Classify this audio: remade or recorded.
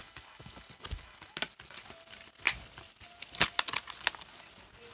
recorded